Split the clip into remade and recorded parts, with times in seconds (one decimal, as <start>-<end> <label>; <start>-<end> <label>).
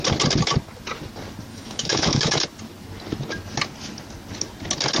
0.0-1.5 recorded; 1.5-2.4 remade; 2.4-5.0 recorded